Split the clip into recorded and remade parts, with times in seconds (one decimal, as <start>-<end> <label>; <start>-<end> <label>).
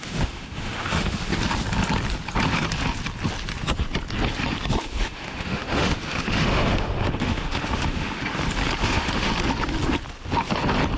0.0-1.3 remade; 1.3-4.8 recorded; 4.8-8.2 remade; 8.2-8.8 recorded; 8.8-9.3 remade; 9.3-11.0 recorded